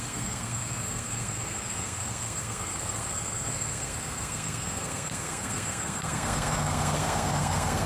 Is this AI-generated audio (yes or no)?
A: yes